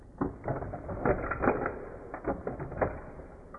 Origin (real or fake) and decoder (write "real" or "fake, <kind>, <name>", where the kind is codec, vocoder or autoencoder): real